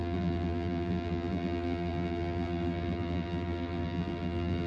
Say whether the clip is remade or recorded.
remade